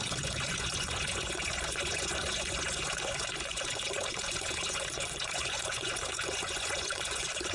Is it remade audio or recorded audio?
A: remade